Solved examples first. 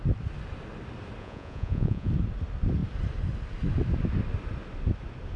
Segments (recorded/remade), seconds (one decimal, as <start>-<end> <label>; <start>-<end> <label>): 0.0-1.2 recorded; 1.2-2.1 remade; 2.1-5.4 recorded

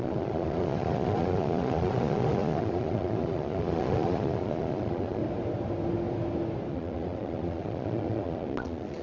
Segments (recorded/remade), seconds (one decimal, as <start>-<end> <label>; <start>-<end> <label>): 0.0-5.2 remade; 5.2-6.7 recorded; 6.7-9.0 remade

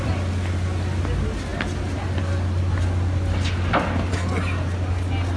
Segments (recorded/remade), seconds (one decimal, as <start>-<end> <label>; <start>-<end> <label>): 0.0-5.4 recorded